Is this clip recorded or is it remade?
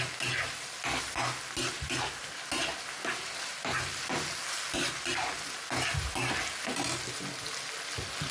recorded